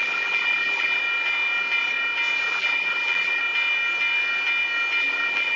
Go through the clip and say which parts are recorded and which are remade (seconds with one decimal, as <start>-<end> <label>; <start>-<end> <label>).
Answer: 0.0-1.0 remade; 1.0-2.5 recorded; 2.5-3.4 remade; 3.4-5.0 recorded; 5.0-5.6 remade